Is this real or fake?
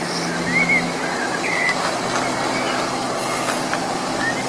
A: real